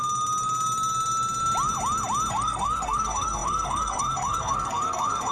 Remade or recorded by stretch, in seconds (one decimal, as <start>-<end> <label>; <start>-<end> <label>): 0.0-2.3 recorded; 2.3-5.3 remade